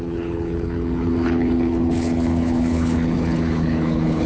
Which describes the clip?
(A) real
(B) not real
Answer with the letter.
B